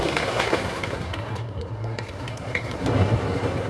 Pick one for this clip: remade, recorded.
remade